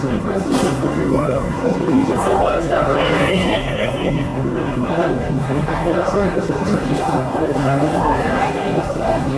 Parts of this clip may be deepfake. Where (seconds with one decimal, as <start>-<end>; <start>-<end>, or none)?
0.0-9.4